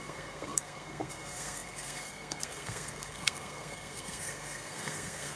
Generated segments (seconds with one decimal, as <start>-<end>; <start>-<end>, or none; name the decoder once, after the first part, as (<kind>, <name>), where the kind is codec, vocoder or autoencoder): 0.0-5.4 (codec, SNAC)